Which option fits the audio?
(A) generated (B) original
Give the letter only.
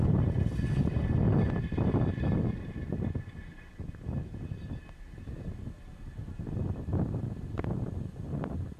B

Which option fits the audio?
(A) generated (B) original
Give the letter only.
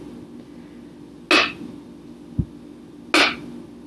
B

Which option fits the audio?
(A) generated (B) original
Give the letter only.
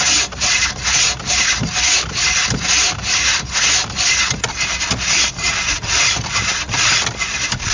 B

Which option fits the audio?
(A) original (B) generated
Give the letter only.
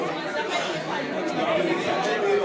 A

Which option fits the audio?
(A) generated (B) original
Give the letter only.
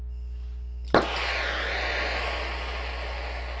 B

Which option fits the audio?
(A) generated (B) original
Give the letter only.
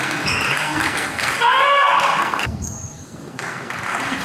A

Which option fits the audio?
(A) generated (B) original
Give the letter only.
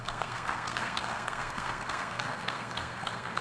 A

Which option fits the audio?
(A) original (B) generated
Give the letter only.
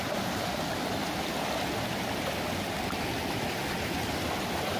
A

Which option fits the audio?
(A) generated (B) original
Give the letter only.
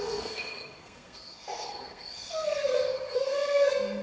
A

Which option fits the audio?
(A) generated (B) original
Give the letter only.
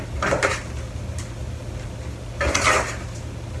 B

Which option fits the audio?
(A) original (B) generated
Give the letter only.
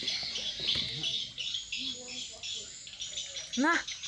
A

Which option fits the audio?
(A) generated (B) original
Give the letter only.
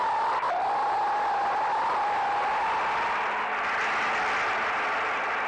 B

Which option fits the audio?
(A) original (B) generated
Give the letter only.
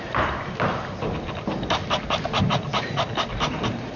A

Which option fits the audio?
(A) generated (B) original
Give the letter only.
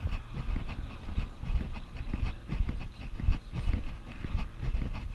B